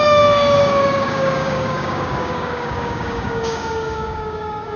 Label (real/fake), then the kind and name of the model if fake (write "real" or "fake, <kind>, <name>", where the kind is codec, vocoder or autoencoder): fake, codec, DAC